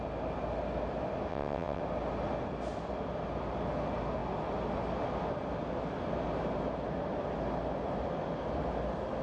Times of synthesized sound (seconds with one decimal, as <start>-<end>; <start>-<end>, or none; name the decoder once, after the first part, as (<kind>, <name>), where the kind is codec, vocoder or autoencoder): 1.3-1.8 (vocoder, WaveNeXt)